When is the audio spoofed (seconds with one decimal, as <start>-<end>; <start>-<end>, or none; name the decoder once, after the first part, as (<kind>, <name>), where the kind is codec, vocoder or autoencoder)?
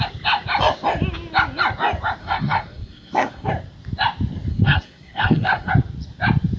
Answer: 2.2-3.5 (codec, SNAC); 4.5-5.7